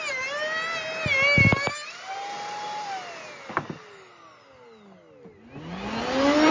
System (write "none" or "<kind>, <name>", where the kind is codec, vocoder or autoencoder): none